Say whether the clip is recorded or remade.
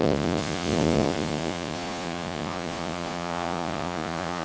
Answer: remade